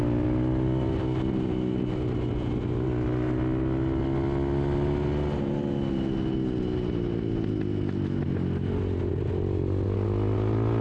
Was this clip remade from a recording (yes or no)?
no